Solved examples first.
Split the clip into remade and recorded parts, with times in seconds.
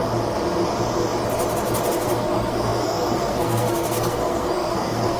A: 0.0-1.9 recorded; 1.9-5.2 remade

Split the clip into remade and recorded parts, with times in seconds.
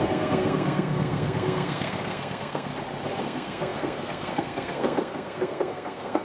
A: 0.0-2.7 remade; 2.7-3.2 recorded; 3.2-6.2 remade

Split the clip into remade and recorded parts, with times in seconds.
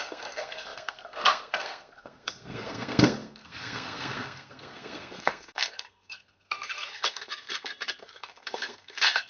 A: 0.0-9.3 remade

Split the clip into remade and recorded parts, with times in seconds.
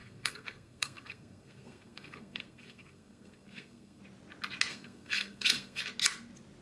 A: 0.0-4.0 remade; 4.0-4.7 recorded; 4.7-5.8 remade; 5.8-6.6 recorded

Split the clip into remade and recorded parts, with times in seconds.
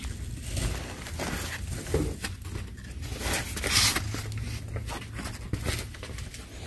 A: 0.0-6.7 recorded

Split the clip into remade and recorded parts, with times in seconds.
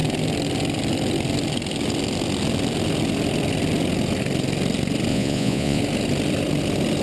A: 0.0-5.1 recorded; 5.1-5.8 remade; 5.8-7.0 recorded